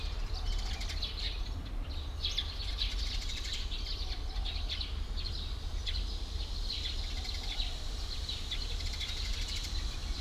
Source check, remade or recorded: recorded